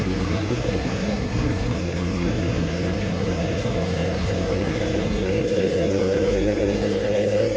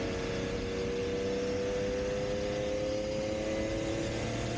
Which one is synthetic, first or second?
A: first